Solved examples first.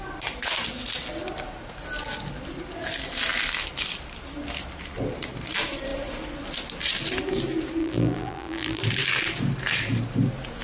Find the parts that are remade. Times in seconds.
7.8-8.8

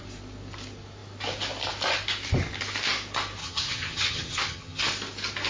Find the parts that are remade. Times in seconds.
3.4-4.8

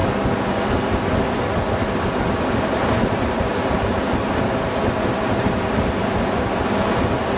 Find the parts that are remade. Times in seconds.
none

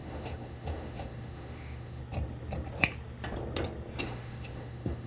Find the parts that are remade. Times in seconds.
0.0-2.0; 4.0-5.1

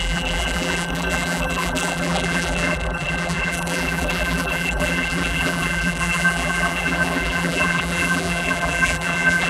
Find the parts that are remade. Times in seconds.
0.0-9.5

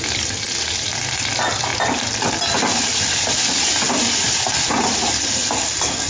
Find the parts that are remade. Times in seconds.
none